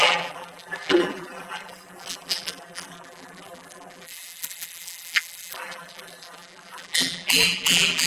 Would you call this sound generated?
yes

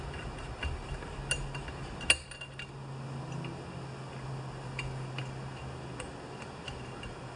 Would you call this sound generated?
no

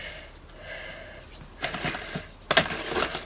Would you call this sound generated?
no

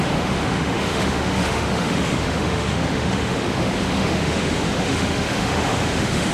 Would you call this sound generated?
yes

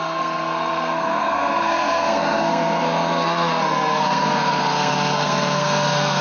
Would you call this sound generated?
yes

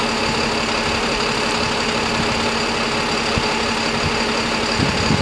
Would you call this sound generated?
no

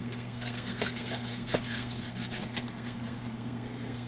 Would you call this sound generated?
yes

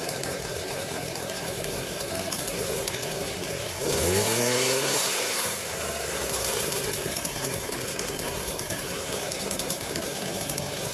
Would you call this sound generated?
yes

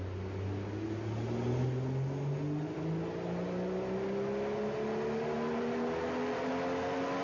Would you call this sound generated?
no